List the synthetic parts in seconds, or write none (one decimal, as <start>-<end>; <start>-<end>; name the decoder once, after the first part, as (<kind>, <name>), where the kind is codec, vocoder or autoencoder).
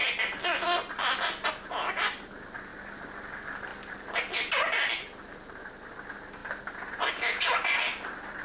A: none